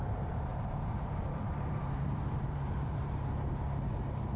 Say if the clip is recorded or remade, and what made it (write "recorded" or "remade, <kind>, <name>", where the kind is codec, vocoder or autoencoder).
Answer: remade, vocoder, BigVGAN v2